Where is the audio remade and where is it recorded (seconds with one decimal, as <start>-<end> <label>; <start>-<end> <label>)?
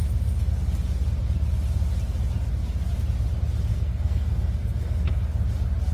0.0-3.7 recorded; 3.7-5.2 remade; 5.2-5.9 recorded